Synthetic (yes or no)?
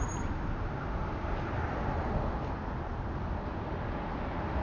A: no